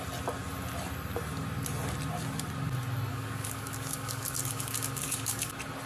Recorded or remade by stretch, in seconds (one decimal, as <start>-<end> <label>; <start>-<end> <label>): 0.0-3.1 recorded; 3.1-5.5 remade; 5.5-5.9 recorded